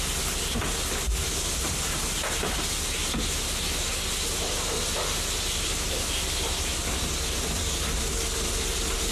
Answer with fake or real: real